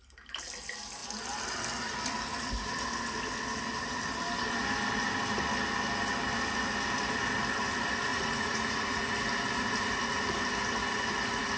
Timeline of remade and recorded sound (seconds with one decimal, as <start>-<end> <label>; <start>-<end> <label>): 0.0-8.1 recorded; 8.1-9.1 remade; 9.1-11.6 recorded